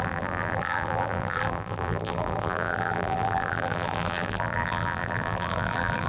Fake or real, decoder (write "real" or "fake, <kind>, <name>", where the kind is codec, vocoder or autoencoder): fake, vocoder, BigVGAN v2